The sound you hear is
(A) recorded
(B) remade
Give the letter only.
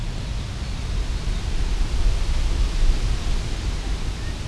A